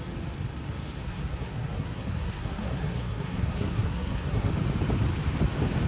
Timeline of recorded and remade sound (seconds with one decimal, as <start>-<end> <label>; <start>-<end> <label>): 0.0-1.0 recorded; 1.0-4.5 remade; 4.5-5.9 recorded